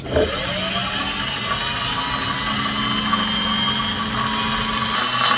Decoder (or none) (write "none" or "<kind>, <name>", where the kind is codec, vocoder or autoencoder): none